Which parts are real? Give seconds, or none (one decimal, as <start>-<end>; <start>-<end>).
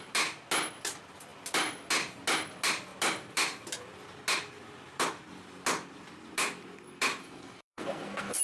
0.0-7.2